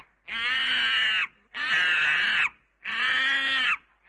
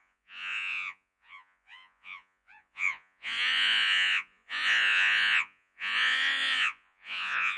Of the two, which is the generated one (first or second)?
second